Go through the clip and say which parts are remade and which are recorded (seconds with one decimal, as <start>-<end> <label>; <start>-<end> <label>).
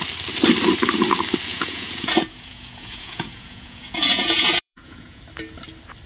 0.0-1.5 recorded; 1.5-5.2 remade; 5.2-6.1 recorded